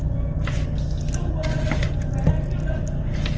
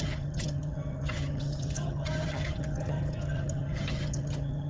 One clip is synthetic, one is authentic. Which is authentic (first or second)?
first